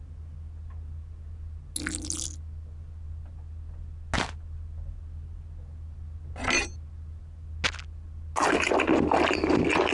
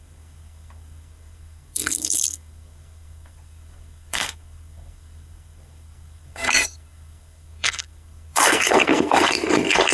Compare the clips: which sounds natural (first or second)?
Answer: first